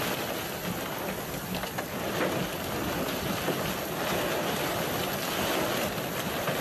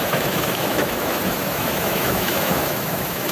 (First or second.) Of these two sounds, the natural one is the first